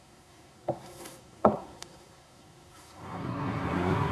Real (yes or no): no